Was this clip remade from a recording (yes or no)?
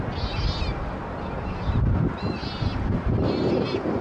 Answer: no